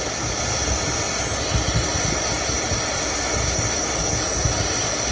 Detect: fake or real real